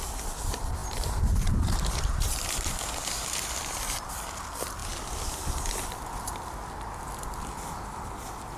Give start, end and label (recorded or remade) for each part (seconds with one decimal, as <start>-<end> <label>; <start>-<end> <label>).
0.0-0.8 recorded; 0.8-3.5 remade; 3.5-8.6 recorded